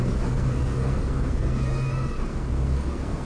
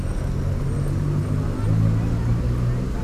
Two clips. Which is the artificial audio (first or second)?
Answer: first